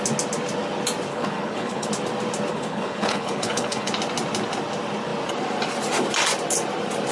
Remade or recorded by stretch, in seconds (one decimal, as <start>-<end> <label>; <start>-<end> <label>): 0.0-1.1 recorded; 1.1-1.9 remade; 1.9-2.5 recorded; 2.5-3.9 remade; 3.9-7.1 recorded